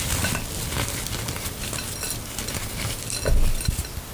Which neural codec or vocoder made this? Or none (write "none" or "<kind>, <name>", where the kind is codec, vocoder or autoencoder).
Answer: none